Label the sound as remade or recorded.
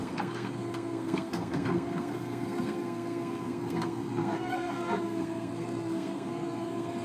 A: remade